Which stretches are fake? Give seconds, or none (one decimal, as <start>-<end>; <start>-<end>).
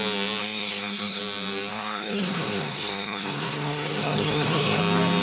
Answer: 0.4-1.2; 1.7-4.8